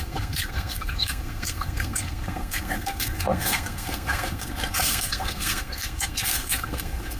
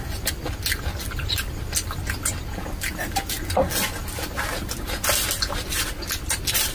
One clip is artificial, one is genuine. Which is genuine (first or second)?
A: second